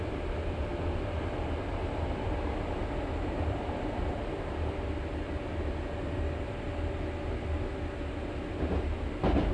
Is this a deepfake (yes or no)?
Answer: no